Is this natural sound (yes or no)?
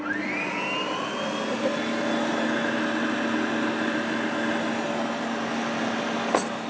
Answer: yes